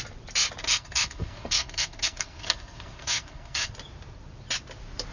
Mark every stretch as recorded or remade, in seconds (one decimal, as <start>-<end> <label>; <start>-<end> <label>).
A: 0.0-0.6 recorded; 0.6-3.7 remade; 3.7-5.1 recorded